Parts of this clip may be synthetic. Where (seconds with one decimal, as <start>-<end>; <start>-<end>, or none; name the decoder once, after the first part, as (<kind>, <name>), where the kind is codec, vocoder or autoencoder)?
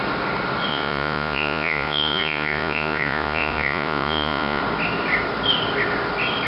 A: 0.7-4.6 (vocoder, Vocos)